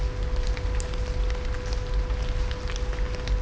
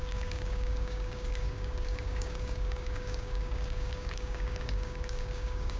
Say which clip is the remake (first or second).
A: second